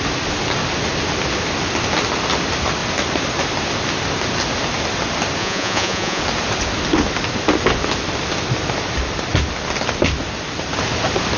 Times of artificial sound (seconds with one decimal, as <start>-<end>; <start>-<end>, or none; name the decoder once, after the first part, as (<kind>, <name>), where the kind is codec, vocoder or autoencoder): 5.4-6.2 (vocoder, Vocos)